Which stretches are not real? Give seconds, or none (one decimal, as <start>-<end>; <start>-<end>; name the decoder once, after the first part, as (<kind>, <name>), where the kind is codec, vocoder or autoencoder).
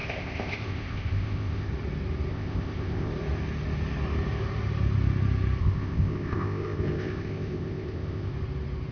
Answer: 0.0-1.7 (codec, ZipCodec); 2.3-3.1; 5.6-8.3